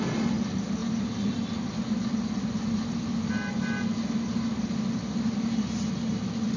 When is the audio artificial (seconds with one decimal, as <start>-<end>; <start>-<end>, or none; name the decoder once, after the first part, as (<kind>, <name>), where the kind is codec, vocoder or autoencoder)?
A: none